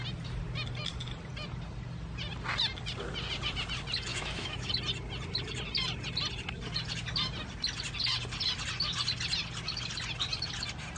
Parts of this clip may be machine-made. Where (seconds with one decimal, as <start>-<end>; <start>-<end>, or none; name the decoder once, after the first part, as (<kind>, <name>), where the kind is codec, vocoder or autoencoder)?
4.1-4.7 (autoencoder, DAC-VAE)